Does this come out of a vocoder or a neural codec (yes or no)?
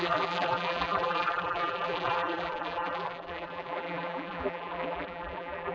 yes